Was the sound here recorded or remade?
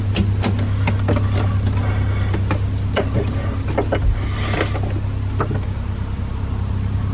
recorded